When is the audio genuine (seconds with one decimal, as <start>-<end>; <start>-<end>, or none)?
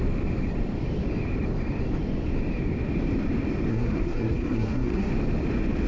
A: 0.0-3.7; 5.1-5.9